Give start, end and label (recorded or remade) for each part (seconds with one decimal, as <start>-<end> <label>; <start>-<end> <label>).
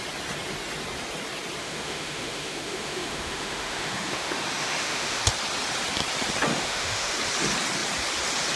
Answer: 0.0-1.6 recorded; 1.6-5.2 remade; 5.2-6.5 recorded; 6.5-7.1 remade; 7.1-8.6 recorded